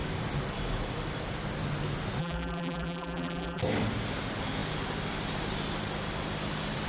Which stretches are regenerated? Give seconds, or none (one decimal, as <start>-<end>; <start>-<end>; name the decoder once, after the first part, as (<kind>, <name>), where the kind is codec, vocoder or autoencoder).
2.2-3.6 (vocoder, BigVGAN v2)